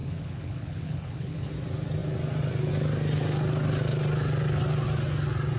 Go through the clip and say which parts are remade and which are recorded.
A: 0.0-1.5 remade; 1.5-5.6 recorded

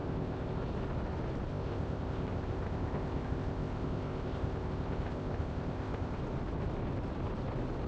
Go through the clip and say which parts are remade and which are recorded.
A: 0.0-0.6 remade; 0.6-1.5 recorded; 1.5-6.2 remade; 6.2-7.9 recorded

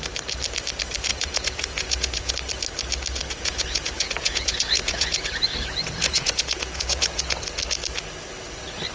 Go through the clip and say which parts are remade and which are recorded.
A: 0.0-1.1 recorded; 1.1-2.3 remade; 2.3-3.2 recorded; 3.2-7.4 remade; 7.4-8.9 recorded

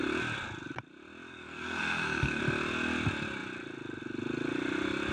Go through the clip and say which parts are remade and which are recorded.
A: 0.0-1.3 recorded; 1.3-2.4 remade; 2.4-5.1 recorded

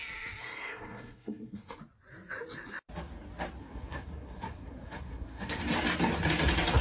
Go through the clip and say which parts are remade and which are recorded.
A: 0.0-0.4 recorded; 0.4-1.8 remade; 1.8-3.6 recorded; 3.6-5.6 remade; 5.6-6.8 recorded

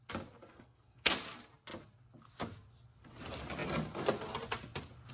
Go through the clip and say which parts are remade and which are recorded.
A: 0.0-0.5 recorded; 0.5-1.1 remade; 1.1-5.1 recorded